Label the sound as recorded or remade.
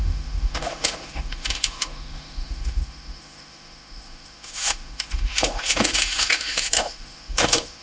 remade